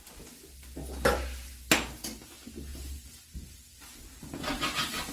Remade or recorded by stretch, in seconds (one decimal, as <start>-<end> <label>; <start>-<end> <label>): 0.0-5.1 recorded